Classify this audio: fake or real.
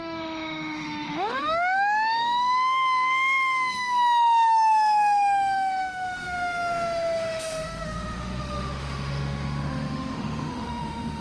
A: fake